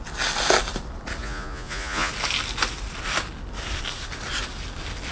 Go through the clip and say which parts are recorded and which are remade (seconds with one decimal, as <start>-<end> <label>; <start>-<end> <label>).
0.0-1.2 recorded; 1.2-2.1 remade; 2.1-5.1 recorded